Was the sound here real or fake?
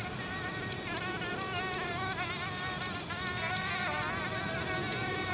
real